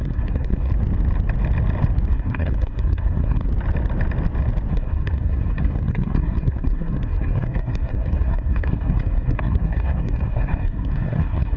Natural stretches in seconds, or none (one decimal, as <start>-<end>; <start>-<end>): 0.7-2.1; 3.5-4.7